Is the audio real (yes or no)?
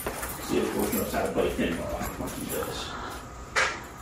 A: no